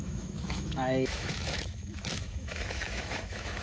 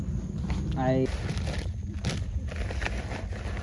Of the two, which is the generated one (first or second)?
first